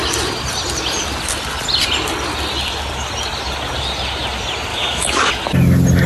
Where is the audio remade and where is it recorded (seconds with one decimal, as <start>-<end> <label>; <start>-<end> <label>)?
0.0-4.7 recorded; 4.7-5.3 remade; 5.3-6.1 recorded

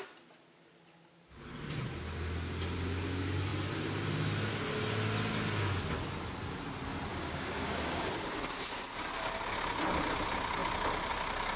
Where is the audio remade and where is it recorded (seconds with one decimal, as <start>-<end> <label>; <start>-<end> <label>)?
0.0-7.1 recorded; 7.1-8.1 remade; 8.1-11.6 recorded

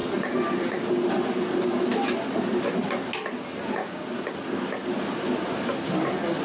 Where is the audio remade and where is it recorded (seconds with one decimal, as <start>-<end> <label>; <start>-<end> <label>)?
0.0-3.8 recorded; 3.8-4.3 remade; 4.3-6.4 recorded